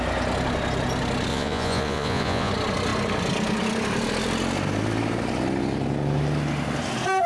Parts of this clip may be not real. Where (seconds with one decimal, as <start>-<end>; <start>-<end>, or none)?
1.3-2.5